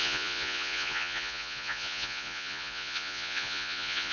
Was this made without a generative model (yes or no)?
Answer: no